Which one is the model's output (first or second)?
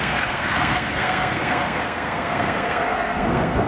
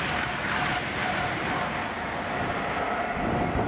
first